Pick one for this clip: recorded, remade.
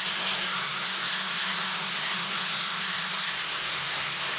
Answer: remade